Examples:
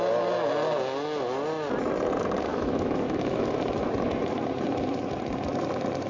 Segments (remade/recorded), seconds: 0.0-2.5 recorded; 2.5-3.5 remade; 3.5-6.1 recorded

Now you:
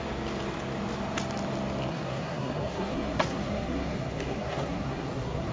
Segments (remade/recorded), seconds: 0.0-1.9 recorded; 1.9-5.5 remade

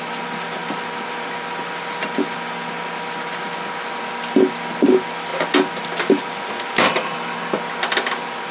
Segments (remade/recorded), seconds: 0.0-8.5 recorded

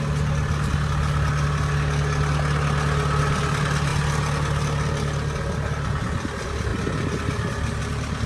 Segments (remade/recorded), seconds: 0.0-8.3 recorded

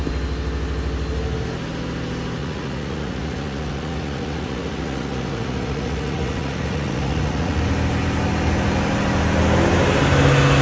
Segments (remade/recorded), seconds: 0.0-2.4 recorded; 2.4-7.6 remade; 7.6-10.6 recorded

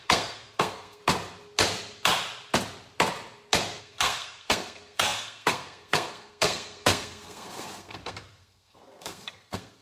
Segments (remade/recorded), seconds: 0.0-1.0 remade; 1.0-3.8 recorded; 3.8-9.8 remade